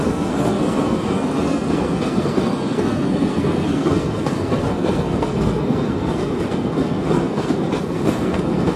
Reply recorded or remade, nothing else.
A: remade